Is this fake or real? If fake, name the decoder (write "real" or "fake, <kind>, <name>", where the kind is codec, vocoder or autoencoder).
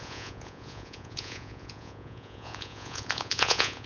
fake, vocoder, Vocos